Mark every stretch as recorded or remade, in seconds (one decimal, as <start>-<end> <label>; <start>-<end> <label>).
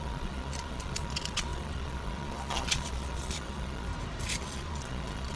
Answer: 0.0-3.9 remade; 3.9-4.4 recorded; 4.4-5.4 remade